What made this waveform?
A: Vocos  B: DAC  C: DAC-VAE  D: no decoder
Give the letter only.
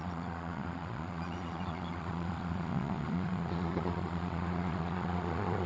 A